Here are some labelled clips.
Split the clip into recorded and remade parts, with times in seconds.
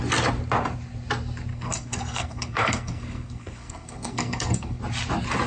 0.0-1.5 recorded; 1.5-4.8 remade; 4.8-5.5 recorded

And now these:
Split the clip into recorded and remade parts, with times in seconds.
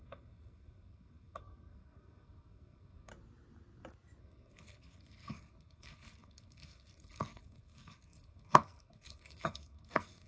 0.0-3.1 remade; 3.1-4.2 recorded; 4.2-10.3 remade